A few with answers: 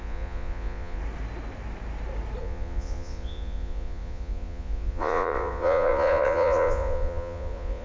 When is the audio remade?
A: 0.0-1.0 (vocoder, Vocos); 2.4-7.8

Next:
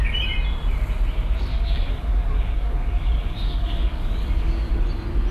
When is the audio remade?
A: 1.5-4.7 (codec, DAC)

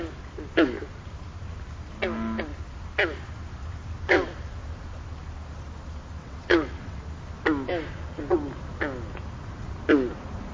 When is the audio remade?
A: 6.2-7.0 (vocoder, WaveNeXt)

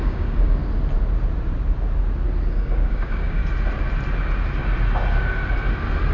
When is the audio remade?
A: 0.0-0.6 (codec, DAC); 2.5-3.4

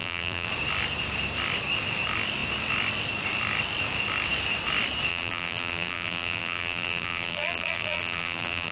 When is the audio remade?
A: 0.0-0.5 (vocoder, BigVGAN v2); 5.1-8.7